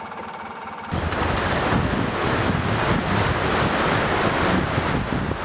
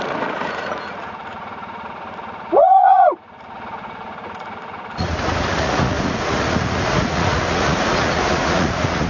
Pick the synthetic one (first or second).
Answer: second